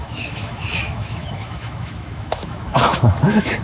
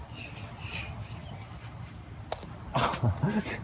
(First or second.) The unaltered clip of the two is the second